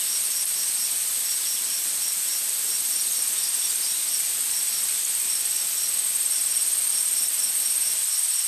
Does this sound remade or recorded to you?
recorded